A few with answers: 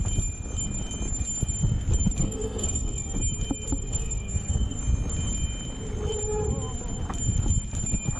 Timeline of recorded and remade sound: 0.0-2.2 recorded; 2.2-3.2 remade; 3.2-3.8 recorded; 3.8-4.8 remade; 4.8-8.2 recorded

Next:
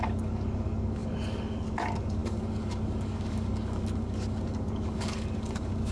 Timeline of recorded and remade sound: 0.0-5.9 remade

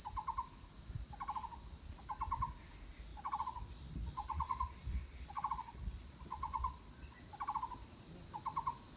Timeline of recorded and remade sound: 0.0-3.1 recorded; 3.1-7.3 remade; 7.3-9.0 recorded

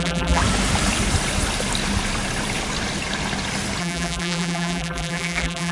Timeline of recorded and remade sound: 0.0-0.4 remade; 0.4-3.8 recorded; 3.8-5.7 remade